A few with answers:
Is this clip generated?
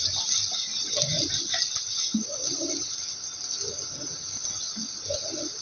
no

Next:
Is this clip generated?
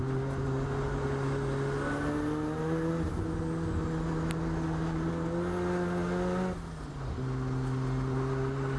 no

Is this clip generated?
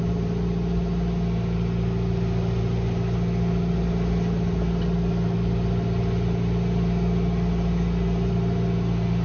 no